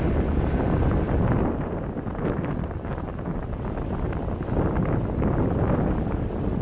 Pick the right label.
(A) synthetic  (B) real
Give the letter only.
B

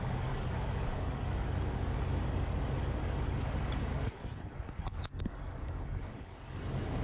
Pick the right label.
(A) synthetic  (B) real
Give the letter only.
A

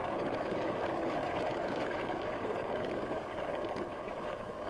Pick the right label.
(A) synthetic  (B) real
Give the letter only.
A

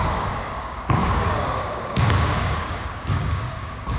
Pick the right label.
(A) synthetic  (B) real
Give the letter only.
A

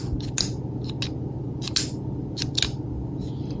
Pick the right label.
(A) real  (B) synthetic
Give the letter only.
A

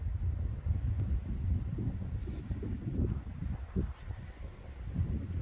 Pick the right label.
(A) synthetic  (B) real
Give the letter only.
B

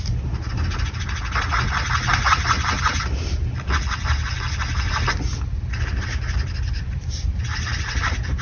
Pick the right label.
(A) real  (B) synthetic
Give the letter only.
A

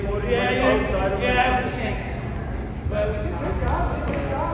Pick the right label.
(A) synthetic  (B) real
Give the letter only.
B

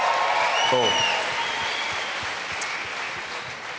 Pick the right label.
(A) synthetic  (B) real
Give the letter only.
B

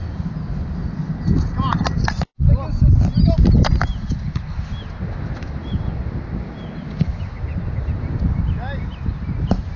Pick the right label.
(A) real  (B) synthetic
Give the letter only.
A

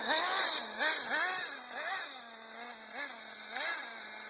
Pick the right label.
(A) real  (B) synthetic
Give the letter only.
A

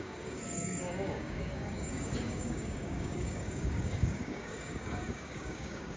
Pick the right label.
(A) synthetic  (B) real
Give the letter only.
A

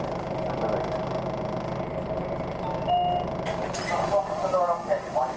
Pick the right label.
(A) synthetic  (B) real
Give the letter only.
B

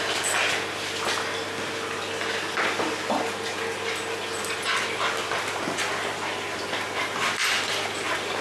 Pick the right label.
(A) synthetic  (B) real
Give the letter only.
B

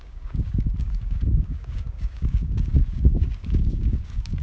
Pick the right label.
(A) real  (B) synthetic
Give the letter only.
B